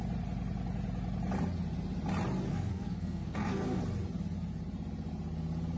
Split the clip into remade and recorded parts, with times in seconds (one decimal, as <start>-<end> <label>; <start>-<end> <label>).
0.0-2.5 recorded; 2.5-3.8 remade; 3.8-5.8 recorded